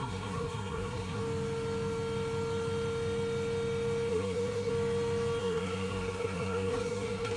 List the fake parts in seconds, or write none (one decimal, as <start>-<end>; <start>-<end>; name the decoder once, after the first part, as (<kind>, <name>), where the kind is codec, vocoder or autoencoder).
0.0-1.2 (codec, SNAC); 4.1-4.7; 5.4-7.4